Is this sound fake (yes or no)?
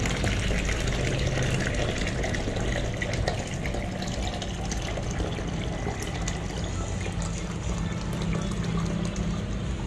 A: no